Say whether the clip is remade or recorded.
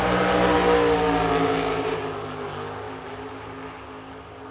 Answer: recorded